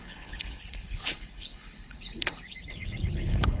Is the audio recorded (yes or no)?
no